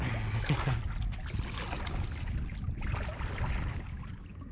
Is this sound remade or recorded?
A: recorded